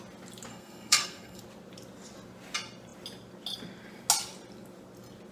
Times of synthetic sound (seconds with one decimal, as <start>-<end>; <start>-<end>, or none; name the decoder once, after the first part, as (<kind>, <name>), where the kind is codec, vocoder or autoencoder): 0.5-1.4 (codec, SNAC)

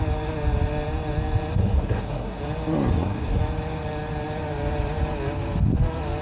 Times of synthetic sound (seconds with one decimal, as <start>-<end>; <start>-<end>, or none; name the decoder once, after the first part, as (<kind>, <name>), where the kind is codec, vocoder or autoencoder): 1.6-2.4 (codec, SNAC); 2.9-3.4